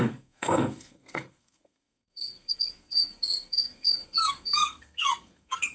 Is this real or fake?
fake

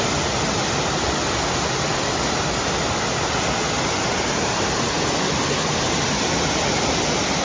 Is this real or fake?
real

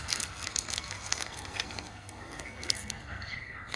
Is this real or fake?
fake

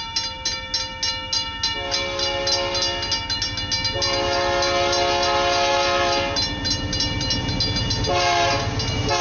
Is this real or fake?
real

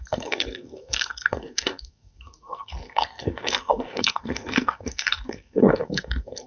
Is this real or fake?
fake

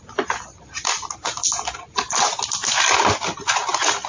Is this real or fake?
real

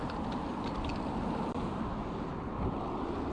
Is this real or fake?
real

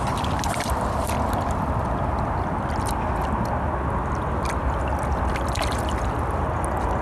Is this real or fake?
real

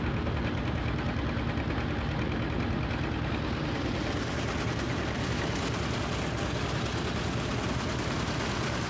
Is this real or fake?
real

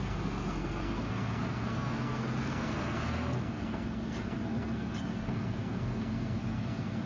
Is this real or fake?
fake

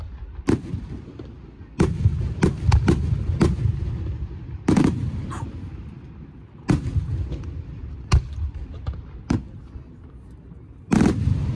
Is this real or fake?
real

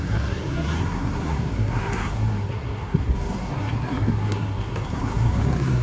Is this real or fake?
fake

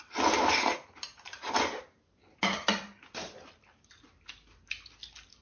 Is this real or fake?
real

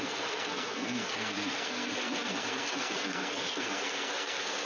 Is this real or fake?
fake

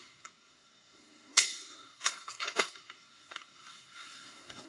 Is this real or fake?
fake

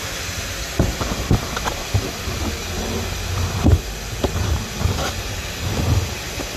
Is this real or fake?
real